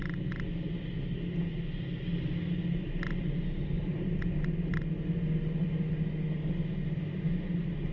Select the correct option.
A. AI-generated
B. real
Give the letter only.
B